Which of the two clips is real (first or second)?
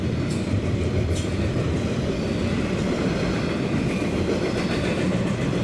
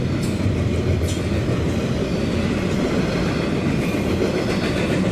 second